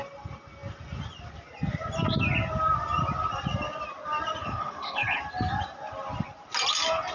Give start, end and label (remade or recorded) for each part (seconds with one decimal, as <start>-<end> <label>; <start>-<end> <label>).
0.0-4.4 recorded; 4.4-5.2 remade; 5.2-7.1 recorded